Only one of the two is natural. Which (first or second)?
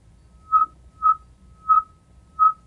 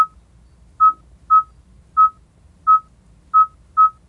second